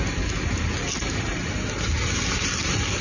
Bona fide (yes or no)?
yes